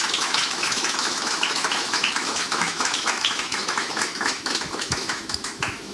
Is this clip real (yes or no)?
no